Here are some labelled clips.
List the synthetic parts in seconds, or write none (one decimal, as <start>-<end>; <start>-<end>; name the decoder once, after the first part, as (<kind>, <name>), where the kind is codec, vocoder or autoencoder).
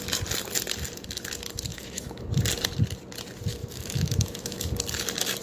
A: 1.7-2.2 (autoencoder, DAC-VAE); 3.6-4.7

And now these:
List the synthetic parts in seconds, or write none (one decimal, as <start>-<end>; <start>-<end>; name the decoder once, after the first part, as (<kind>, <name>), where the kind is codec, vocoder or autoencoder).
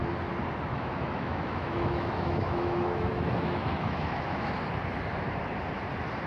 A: 0.7-4.5 (autoencoder, DAC-VAE)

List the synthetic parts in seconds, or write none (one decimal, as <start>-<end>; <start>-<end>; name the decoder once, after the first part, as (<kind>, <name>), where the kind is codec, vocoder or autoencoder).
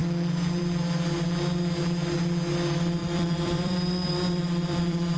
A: 3.0-5.2 (vocoder, BigVGAN v2)